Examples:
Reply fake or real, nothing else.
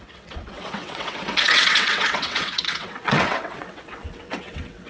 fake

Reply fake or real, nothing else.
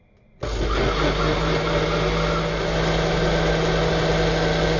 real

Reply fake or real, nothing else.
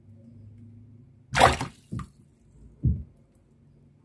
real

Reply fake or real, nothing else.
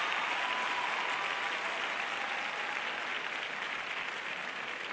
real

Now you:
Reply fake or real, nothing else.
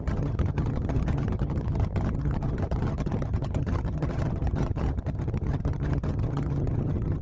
fake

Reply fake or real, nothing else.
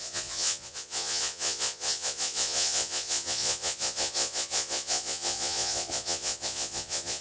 fake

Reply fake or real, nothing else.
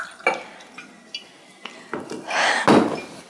real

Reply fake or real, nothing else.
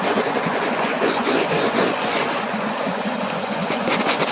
fake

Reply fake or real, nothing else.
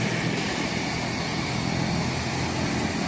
real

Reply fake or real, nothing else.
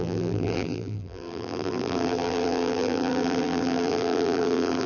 fake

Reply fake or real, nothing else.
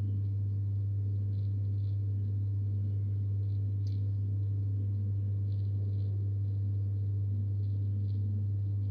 real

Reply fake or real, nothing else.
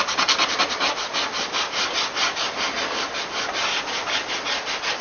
real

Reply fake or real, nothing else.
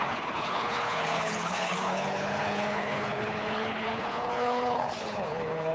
fake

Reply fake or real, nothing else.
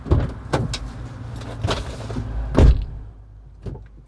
real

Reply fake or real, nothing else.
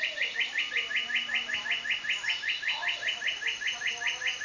real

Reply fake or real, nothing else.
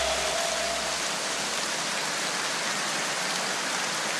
real